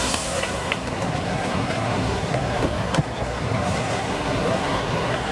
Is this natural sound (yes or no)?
no